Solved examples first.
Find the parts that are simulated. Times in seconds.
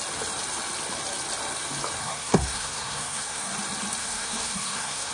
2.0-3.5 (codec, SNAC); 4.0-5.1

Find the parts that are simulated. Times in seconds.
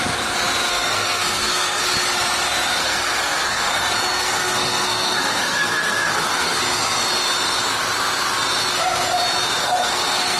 0.7-1.8 (codec, SNAC); 2.8-3.8; 4.2-6.6; 9.6-10.4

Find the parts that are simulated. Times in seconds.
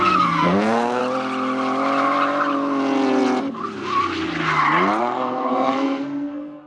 0.0-1.0 (codec, SNAC); 5.0-6.7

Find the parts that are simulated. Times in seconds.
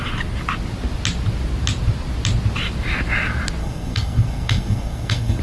3.6-5.4 (codec, SNAC)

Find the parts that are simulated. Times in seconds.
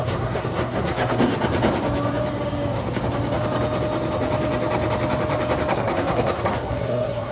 0.0-1.3 (codec, SNAC); 5.7-7.3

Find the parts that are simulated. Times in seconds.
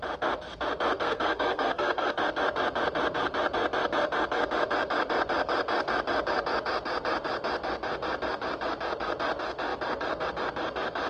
1.0-2.3 (codec, SNAC)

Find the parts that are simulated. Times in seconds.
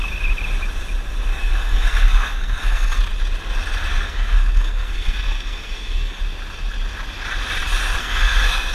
1.3-3.0 (codec, SNAC); 3.9-6.2; 8.0-8.7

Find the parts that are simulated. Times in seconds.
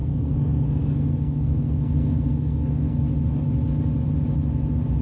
0.0-3.0 (codec, SNAC)